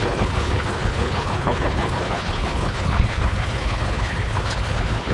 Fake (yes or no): yes